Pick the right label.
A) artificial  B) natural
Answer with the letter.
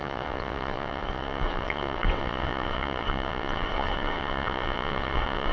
A